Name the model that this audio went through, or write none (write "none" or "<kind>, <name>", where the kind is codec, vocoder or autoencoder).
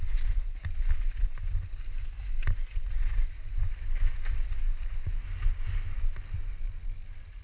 none